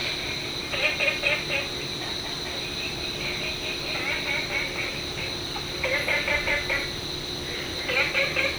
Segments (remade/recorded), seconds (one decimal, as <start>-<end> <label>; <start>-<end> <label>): 0.0-8.6 recorded

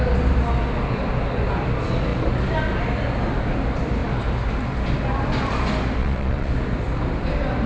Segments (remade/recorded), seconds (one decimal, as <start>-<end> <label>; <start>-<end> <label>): 0.0-6.0 recorded; 6.0-6.5 remade; 6.5-7.7 recorded